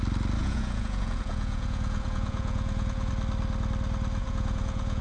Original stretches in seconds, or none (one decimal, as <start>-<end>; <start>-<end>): 0.0-0.4; 3.1-4.2